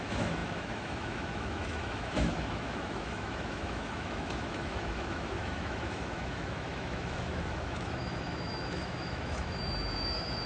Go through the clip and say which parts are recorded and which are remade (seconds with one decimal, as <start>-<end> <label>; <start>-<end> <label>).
0.0-10.5 remade